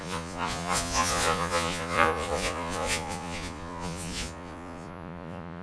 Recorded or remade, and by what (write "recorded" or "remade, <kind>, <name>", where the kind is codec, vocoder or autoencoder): remade, vocoder, Vocos